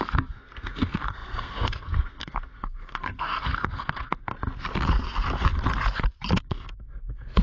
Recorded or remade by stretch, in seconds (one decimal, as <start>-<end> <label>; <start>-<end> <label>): 0.0-4.3 remade; 4.3-6.5 recorded; 6.5-7.4 remade